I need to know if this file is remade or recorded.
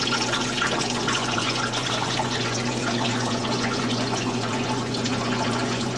remade